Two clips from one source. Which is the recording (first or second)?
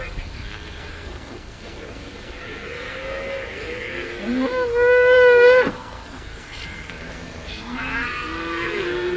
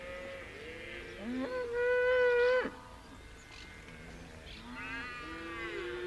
second